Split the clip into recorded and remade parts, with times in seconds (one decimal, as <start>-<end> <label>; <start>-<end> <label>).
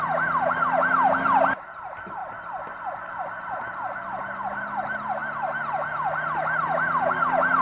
0.0-7.6 recorded